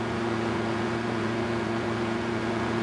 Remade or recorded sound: remade